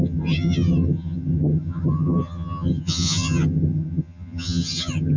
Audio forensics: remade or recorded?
remade